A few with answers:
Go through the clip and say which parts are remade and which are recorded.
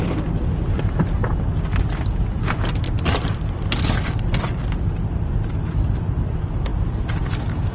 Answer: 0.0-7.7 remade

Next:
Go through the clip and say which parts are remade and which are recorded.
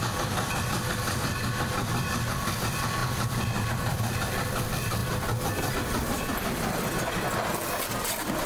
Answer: 0.0-8.5 recorded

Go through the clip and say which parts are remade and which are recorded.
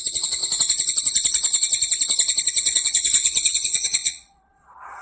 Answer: 0.0-0.4 remade; 0.4-2.5 recorded; 2.5-5.0 remade